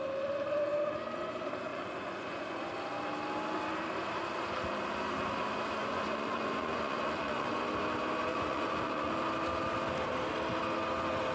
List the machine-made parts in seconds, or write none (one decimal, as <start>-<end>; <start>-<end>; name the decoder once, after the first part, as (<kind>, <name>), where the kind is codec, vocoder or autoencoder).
1.7-2.7 (vocoder, Vocos); 5.8-7.6; 8.3-9.1